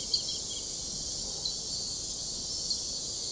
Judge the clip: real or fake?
real